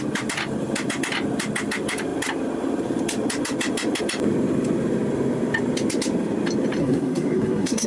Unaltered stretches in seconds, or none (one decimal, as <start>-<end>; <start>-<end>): 0.0-6.8